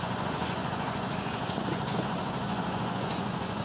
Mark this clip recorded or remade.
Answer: remade